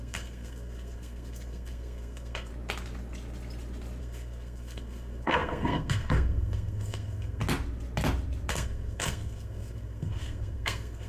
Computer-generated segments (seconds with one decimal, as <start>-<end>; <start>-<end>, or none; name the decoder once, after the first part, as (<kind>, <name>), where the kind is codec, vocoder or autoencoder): 0.0-2.5 (codec, SNAC); 4.0-7.4; 8.5-11.1